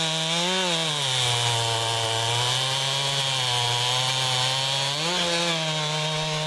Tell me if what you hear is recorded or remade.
recorded